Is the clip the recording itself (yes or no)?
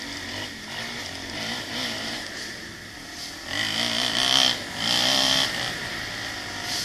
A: yes